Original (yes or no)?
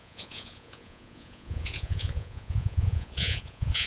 no